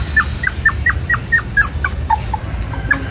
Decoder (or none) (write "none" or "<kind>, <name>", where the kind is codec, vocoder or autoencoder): none